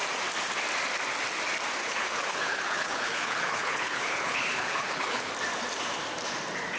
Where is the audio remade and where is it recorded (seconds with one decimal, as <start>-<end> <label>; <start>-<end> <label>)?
0.0-1.8 recorded; 1.8-5.3 remade; 5.3-6.8 recorded